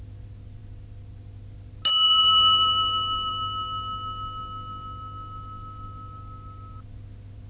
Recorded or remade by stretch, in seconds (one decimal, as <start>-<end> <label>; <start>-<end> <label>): 0.0-7.5 recorded